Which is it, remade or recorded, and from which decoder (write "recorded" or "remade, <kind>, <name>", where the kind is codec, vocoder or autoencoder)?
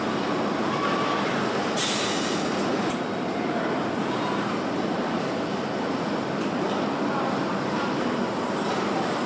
recorded